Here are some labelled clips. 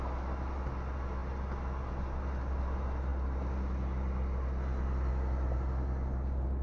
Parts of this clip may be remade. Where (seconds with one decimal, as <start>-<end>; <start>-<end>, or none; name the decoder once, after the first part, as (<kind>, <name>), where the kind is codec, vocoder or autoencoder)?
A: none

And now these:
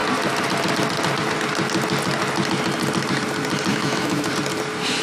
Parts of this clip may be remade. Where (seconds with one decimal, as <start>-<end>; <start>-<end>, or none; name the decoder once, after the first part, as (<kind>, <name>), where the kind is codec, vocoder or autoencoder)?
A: 3.7-4.3 (autoencoder, DAC-VAE)

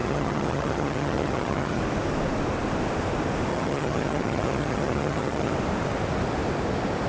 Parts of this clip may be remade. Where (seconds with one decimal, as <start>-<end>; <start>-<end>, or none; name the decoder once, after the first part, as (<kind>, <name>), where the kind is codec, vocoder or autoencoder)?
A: 0.0-1.8 (vocoder, HiFi-GAN); 3.5-5.5

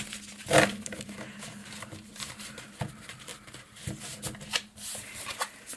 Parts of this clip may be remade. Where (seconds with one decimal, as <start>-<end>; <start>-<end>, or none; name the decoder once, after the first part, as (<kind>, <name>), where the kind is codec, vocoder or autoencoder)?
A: 1.6-2.8 (vocoder, BigVGAN v2); 3.3-3.9